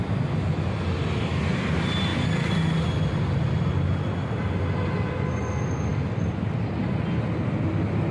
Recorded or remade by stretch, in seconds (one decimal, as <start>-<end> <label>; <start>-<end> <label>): 0.0-8.1 recorded